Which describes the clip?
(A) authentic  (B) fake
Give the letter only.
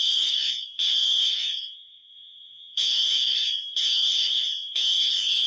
B